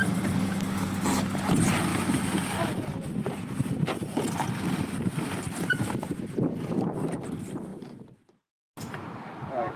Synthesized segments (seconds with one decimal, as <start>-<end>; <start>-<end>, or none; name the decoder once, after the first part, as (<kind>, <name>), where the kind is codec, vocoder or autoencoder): none